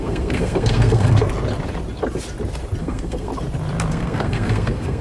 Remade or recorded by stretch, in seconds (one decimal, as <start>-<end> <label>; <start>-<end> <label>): 0.0-1.3 remade; 1.3-2.8 recorded; 2.8-3.3 remade; 3.3-3.9 recorded; 3.9-5.0 remade